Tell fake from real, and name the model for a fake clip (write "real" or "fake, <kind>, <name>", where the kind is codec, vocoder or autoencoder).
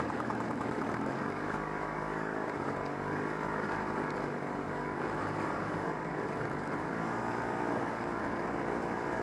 fake, codec, DAC